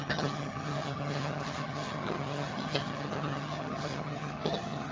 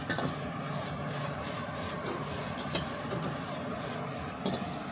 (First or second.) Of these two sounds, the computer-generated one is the first